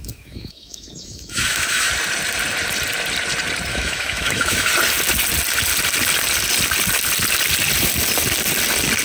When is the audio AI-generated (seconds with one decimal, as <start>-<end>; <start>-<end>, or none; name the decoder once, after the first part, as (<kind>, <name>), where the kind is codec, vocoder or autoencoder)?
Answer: 0.0-1.9 (autoencoder, DAC-VAE); 3.7-4.7